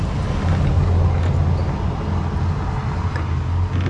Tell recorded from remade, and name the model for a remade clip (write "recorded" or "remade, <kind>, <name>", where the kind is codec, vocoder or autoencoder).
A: recorded